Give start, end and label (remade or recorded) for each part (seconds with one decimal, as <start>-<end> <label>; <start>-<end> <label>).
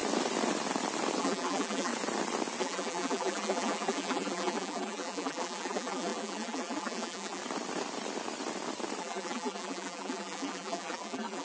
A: 0.0-1.2 recorded; 1.2-1.9 remade; 1.9-2.6 recorded; 2.6-7.4 remade; 7.4-9.0 recorded; 9.0-11.4 remade